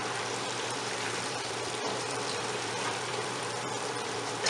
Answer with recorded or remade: remade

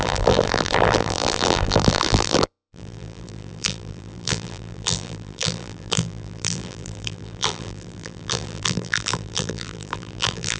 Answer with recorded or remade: remade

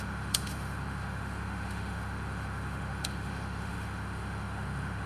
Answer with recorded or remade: remade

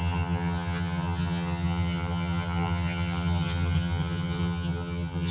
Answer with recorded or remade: remade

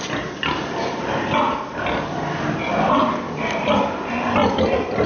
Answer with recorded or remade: recorded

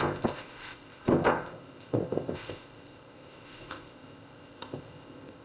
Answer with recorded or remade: remade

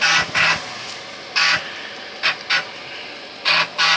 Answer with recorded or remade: recorded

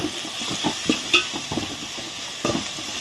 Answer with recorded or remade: remade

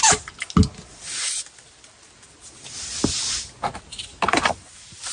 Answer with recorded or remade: recorded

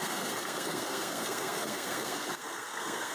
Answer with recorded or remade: remade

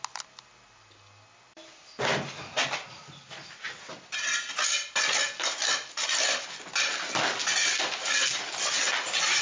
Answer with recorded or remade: recorded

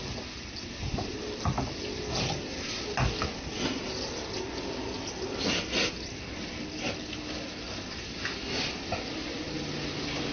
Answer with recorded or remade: recorded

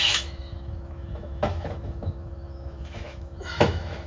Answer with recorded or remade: remade